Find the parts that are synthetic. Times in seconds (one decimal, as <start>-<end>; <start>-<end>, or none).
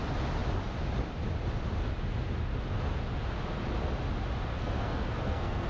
4.5-5.7